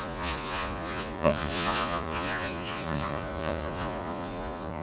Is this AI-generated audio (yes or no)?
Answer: yes